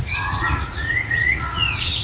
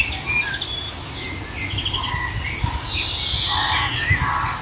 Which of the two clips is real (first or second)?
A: second